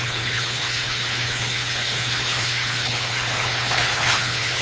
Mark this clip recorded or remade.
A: remade